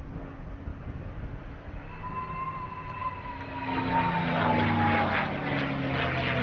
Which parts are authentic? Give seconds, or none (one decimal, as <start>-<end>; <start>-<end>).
0.0-6.4